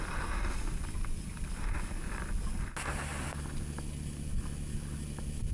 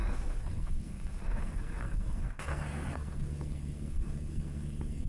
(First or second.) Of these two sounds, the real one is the first